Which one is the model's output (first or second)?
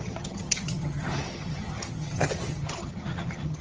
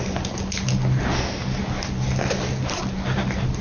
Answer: first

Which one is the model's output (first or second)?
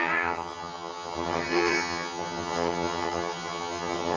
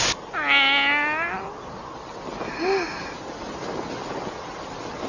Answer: first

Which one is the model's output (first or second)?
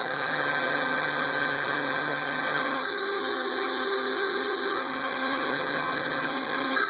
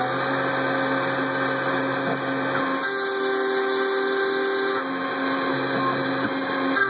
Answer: first